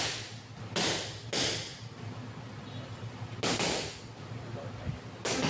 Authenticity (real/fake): real